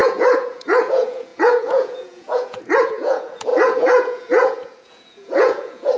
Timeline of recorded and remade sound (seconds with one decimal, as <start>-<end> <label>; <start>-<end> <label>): 0.0-6.0 remade